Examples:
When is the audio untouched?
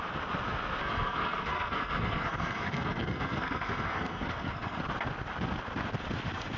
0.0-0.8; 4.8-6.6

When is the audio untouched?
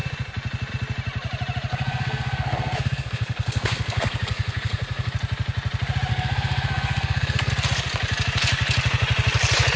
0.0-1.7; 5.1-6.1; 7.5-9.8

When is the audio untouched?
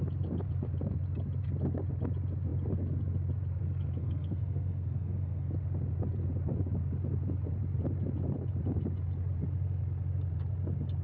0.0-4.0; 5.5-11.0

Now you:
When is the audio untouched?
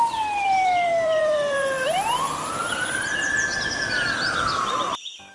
none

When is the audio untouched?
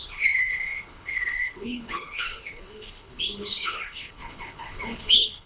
none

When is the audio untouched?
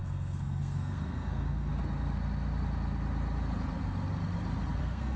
1.7-4.8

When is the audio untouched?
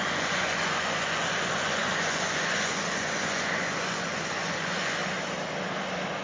5.0-6.2